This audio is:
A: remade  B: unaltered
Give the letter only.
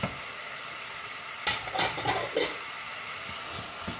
B